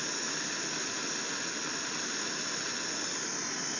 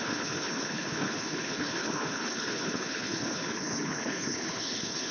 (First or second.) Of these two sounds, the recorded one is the first